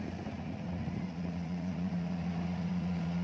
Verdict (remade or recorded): remade